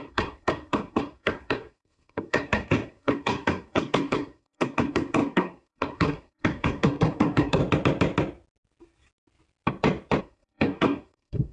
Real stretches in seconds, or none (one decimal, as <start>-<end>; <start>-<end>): 7.6-10.2